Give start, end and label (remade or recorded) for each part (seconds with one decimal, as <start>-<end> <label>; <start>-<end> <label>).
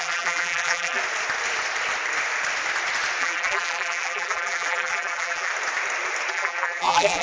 0.0-1.0 remade; 1.0-3.2 recorded; 3.2-5.5 remade; 5.5-6.3 recorded; 6.3-7.2 remade